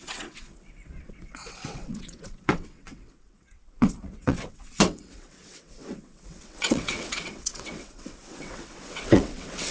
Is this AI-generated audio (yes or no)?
yes